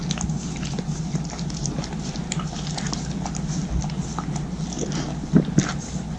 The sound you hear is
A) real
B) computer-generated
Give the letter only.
A